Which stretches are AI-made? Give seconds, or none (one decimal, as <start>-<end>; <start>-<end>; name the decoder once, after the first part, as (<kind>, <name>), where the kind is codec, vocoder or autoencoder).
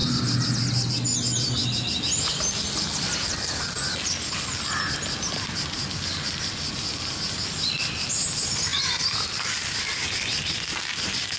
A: none